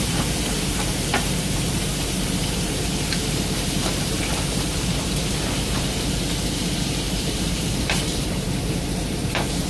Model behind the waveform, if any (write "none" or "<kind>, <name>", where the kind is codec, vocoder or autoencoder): vocoder, BigVGAN v2